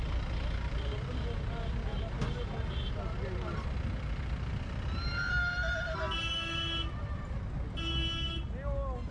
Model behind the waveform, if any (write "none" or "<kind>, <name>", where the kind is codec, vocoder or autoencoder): none